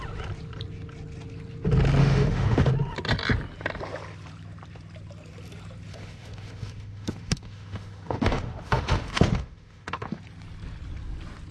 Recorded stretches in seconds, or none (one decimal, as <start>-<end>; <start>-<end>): 0.0-2.0; 2.7-5.9; 10.2-11.5